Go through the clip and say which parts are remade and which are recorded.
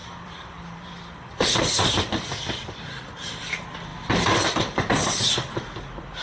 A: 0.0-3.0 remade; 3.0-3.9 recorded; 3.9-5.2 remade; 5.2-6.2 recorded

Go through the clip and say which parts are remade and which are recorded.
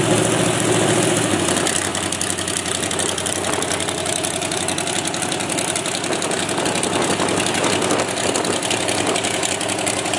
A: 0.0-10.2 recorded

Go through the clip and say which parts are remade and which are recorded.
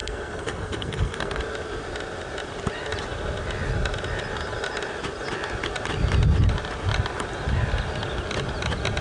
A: 0.0-1.4 remade; 1.4-9.0 recorded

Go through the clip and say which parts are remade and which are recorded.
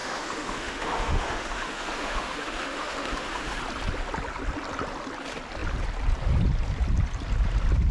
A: 0.0-3.6 remade; 3.6-7.9 recorded